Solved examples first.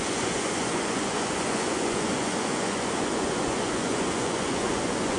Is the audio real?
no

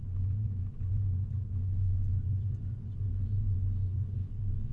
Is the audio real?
no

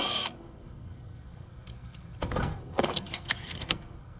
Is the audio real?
no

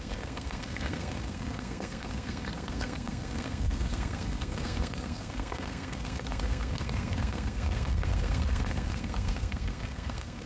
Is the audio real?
no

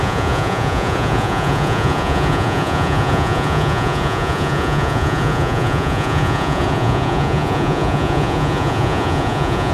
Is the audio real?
no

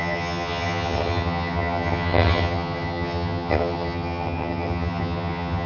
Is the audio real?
no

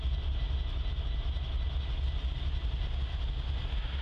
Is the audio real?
yes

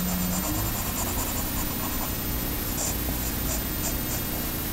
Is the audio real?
yes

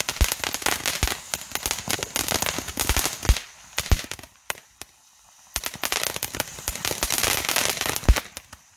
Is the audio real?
yes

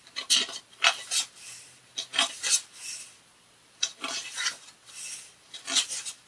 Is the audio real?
yes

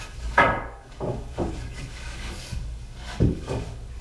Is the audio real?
no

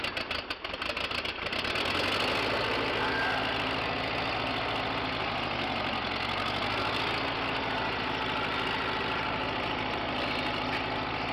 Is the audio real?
yes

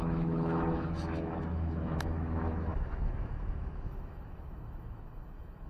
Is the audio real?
no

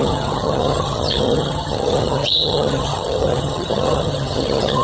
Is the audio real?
no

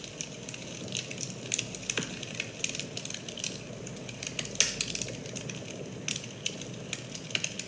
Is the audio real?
yes